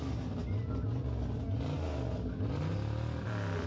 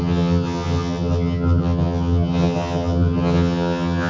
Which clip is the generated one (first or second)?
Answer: second